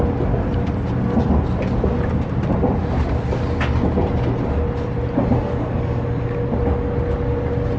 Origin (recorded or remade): recorded